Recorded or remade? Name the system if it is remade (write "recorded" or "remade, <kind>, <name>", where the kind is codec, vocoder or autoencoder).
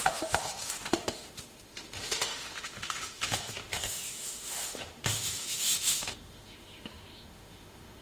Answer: remade, autoencoder, DAC-VAE